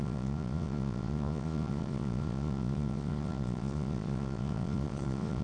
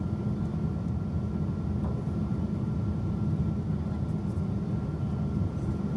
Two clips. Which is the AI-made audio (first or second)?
first